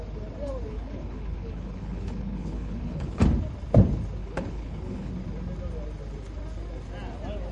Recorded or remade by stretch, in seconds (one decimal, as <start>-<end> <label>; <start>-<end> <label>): 0.0-0.7 recorded; 0.7-3.2 remade; 3.2-4.2 recorded; 4.2-5.1 remade; 5.1-7.5 recorded